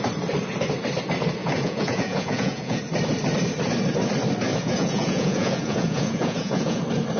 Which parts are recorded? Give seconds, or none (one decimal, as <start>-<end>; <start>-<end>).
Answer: 0.0-1.4; 2.8-4.5; 6.8-7.2